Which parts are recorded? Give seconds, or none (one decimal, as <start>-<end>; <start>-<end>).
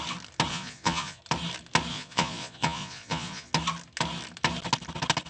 0.0-0.5; 1.2-1.9; 3.5-5.3